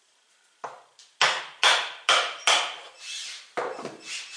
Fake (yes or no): no